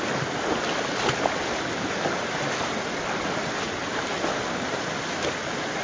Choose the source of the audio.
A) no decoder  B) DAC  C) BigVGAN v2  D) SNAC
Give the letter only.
A